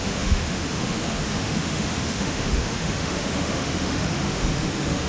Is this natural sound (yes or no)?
no